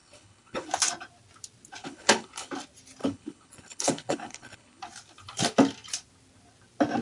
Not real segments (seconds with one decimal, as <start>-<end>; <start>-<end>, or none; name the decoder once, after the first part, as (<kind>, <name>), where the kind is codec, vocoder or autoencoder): 0.0-0.7 (codec, HILCodec); 1.8-2.5; 3.0-4.8